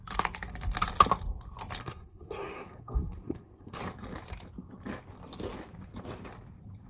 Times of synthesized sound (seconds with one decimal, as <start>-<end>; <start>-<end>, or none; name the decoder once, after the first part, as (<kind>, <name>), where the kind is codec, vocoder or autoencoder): 1.8-3.8 (codec, SNAC)